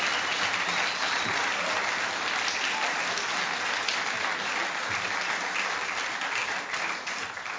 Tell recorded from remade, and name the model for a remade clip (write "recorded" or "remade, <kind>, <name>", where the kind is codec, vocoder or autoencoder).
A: recorded